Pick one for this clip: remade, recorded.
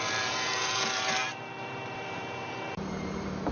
remade